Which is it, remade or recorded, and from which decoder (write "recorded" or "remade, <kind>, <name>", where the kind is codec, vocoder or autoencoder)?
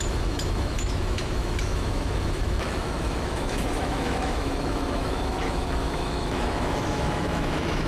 remade, autoencoder, DAC-VAE